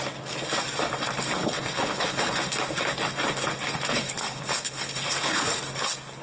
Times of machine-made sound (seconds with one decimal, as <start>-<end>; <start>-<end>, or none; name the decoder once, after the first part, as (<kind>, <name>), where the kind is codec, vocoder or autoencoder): 1.4-2.3 (codec, HILCodec); 3.9-5.6